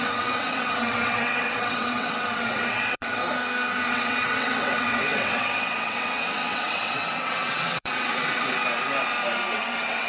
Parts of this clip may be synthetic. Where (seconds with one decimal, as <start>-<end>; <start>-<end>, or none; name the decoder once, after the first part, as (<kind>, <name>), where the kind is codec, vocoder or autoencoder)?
0.0-3.2 (vocoder, WaveNeXt); 3.9-8.6; 9.5-10.1